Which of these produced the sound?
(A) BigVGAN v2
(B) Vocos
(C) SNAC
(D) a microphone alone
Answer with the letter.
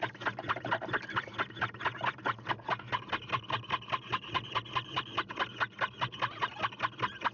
D